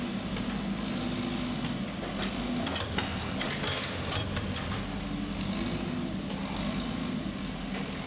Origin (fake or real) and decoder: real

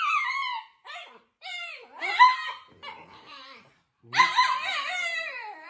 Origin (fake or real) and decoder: fake, vocoder, BigVGAN v2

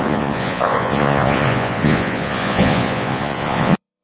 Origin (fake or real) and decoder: fake, vocoder, Vocos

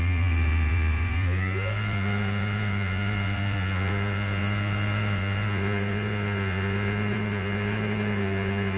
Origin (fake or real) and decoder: fake, vocoder, Vocos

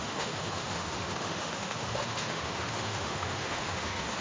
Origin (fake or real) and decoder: fake, autoencoder, DAC-VAE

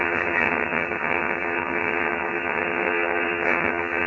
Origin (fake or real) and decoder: fake, vocoder, HiFi-GAN